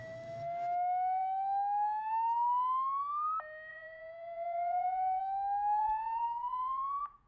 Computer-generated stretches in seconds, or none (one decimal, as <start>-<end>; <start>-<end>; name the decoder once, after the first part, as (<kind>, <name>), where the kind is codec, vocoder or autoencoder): 3.7-5.2 (vocoder, Vocos); 5.8-7.3